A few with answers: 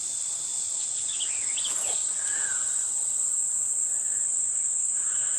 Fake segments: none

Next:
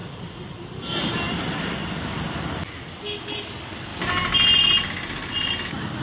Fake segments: none

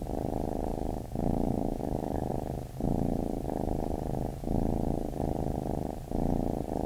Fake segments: 0.7-2.3 (codec, DAC)

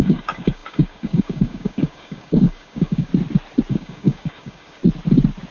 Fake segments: 0.0-3.1 (codec, DAC); 3.7-4.8

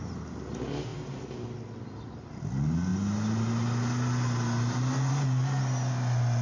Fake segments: none

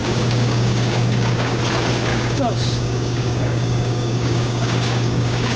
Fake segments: 0.0-1.6 (codec, DAC); 2.1-5.6

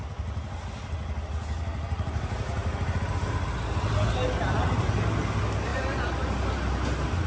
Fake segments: none